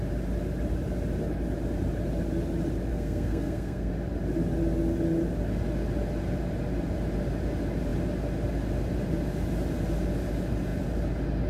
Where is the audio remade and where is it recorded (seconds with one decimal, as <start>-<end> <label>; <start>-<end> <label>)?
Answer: 0.0-2.9 recorded; 2.9-3.9 remade; 3.9-11.5 recorded